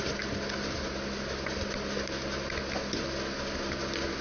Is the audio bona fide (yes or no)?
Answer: yes